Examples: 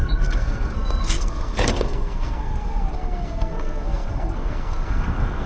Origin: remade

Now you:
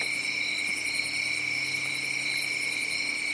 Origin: recorded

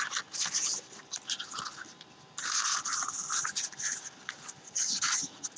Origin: recorded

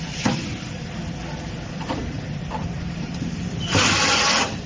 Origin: remade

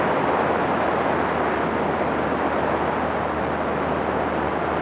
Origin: recorded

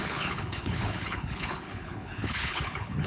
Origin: remade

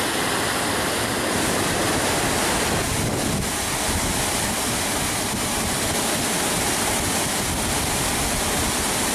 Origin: recorded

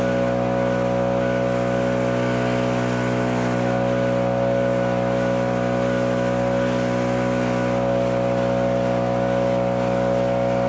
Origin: recorded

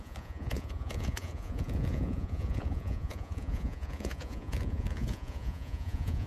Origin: remade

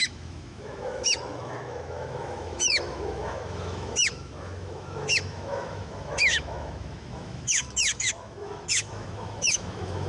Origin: remade